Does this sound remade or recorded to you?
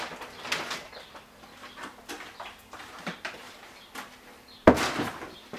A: remade